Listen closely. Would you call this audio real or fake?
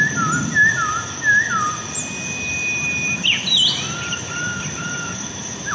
real